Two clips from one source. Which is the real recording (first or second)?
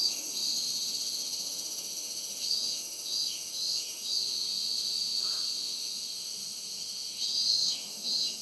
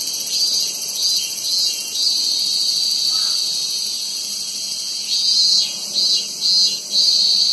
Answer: second